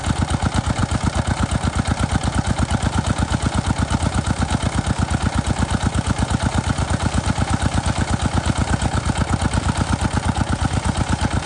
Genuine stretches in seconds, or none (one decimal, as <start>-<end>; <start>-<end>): 0.0-11.5